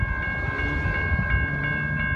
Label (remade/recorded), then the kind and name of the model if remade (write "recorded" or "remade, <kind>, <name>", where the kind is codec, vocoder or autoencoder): recorded